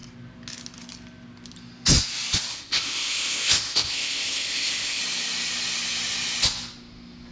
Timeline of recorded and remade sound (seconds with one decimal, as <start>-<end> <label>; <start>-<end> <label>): 0.0-2.5 recorded; 2.5-5.0 remade; 5.0-7.3 recorded